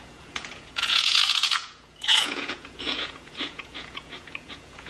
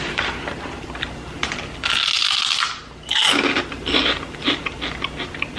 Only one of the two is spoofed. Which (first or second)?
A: first